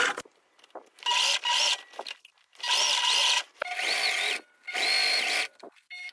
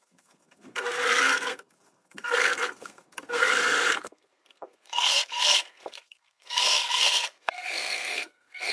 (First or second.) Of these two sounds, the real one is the first